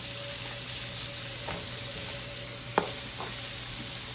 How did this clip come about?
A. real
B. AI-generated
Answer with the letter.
A